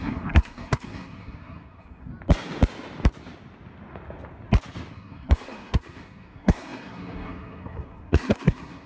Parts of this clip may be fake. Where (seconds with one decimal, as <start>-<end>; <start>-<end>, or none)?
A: 0.0-2.1; 4.9-8.9